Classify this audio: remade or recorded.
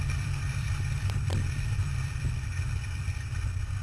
remade